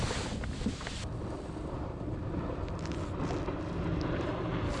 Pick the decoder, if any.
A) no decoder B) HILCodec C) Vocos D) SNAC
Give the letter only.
A